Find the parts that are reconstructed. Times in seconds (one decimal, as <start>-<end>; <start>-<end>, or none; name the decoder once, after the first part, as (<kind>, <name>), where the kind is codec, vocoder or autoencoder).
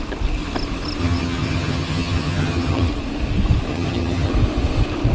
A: 1.0-2.9 (vocoder, HiFi-GAN); 3.7-4.3